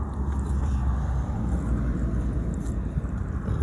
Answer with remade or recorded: remade